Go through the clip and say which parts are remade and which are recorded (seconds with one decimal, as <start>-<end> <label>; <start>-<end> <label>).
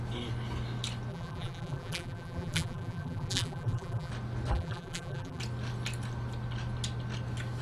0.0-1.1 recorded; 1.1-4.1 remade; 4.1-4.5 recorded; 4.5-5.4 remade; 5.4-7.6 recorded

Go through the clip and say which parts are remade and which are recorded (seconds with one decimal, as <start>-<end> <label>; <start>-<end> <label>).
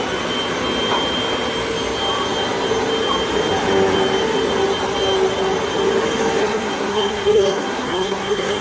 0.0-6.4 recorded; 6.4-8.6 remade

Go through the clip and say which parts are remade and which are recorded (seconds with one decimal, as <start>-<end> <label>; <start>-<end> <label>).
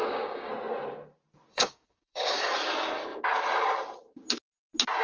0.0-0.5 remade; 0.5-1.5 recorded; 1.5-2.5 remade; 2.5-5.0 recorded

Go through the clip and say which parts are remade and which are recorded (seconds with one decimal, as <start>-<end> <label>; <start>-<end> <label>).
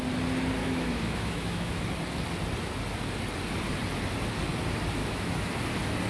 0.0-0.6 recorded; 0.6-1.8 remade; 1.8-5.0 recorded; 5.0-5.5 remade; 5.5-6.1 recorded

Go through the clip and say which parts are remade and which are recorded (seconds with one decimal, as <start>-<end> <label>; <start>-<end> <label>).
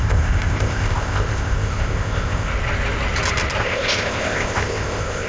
0.0-2.5 remade; 2.5-3.6 recorded; 3.6-5.3 remade